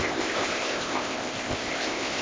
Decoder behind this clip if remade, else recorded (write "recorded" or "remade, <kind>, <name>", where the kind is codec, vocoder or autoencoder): remade, codec, ZipCodec